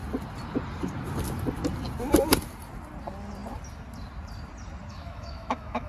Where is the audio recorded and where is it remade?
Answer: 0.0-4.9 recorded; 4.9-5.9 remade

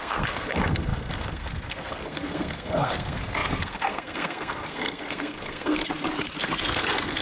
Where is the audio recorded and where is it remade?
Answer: 0.0-5.8 remade; 5.8-6.4 recorded; 6.4-7.2 remade

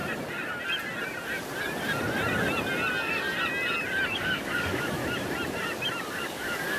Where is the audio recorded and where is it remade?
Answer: 0.0-4.1 recorded; 4.1-5.0 remade; 5.0-6.1 recorded; 6.1-6.8 remade

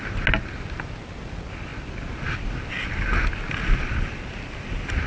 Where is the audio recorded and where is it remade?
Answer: 0.0-5.1 recorded

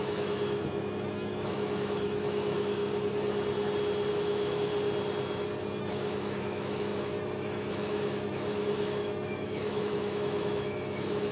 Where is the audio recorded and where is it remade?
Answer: 0.0-2.8 remade; 2.8-4.1 recorded; 4.1-4.7 remade; 4.7-5.8 recorded; 5.8-11.3 remade

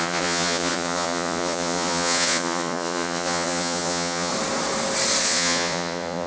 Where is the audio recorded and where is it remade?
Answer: 0.0-4.3 remade; 4.3-5.2 recorded; 5.2-6.3 remade